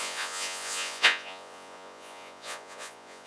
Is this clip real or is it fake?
fake